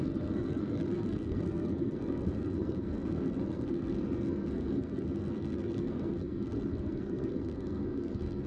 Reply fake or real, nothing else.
fake